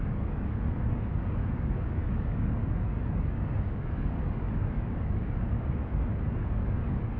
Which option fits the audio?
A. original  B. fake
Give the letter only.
B